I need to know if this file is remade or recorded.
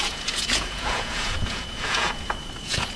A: remade